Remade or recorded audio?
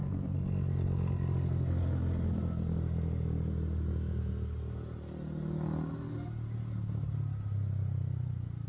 recorded